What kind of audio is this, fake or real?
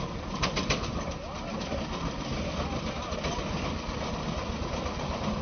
real